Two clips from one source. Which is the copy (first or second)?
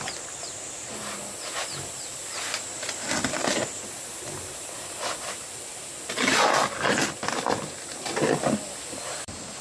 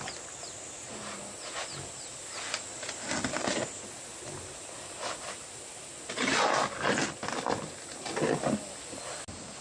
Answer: first